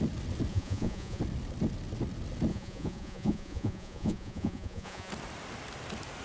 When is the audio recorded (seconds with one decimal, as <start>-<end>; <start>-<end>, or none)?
0.0-0.5; 1.2-2.5; 5.1-6.2